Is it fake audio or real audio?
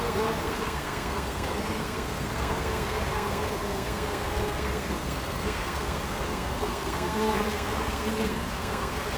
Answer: fake